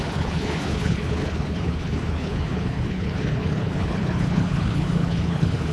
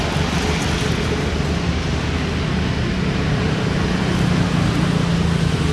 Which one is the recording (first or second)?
second